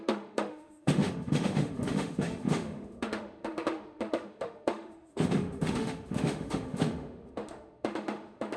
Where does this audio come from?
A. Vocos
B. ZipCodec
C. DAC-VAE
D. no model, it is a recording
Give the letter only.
C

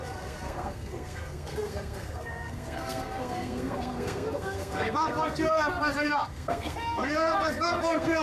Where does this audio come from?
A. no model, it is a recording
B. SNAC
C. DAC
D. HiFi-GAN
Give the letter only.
B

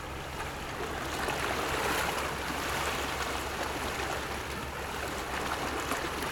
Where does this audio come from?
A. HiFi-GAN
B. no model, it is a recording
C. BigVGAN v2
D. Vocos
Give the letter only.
B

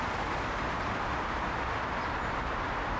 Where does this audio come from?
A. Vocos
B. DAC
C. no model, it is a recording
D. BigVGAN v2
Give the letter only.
C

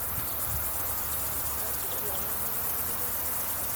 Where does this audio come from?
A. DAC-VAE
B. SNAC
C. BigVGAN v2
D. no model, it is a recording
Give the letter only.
D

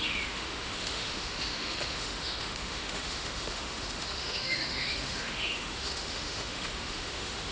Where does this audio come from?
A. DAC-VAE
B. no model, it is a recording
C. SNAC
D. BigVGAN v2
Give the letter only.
A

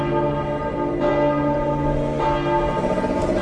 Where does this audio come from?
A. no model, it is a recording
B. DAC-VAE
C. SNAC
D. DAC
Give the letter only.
A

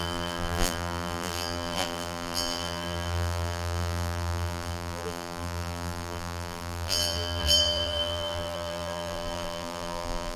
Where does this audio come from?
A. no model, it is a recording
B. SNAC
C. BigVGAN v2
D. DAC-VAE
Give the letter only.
C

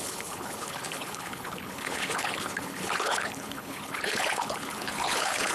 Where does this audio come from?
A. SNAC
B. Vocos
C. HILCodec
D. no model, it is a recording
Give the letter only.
C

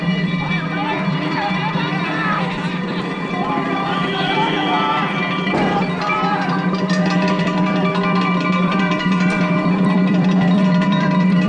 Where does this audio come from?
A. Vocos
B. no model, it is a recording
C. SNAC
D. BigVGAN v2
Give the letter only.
D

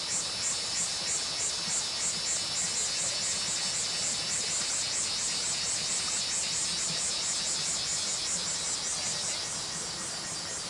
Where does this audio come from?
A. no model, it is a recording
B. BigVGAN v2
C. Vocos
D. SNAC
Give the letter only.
A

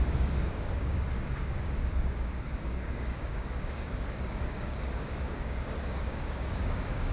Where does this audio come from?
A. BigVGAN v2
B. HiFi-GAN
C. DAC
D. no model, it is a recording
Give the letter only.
C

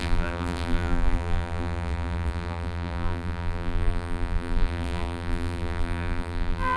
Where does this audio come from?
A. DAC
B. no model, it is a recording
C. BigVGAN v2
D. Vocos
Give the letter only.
C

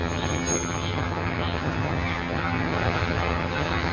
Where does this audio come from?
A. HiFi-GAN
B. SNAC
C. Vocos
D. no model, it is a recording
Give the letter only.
A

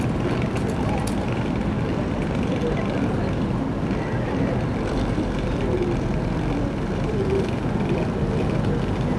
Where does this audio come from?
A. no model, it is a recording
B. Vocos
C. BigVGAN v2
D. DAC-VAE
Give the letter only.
A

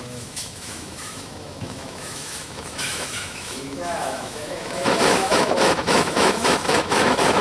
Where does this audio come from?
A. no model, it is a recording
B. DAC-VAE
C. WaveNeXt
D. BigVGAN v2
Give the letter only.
B